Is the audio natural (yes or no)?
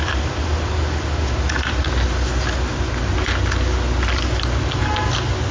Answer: yes